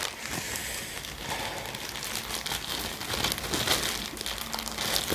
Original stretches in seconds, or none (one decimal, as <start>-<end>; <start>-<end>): 0.0-5.1